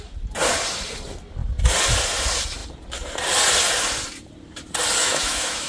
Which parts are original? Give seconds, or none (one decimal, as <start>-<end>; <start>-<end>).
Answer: 0.0-5.0